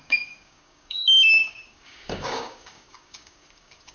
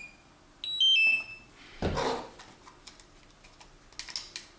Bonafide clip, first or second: second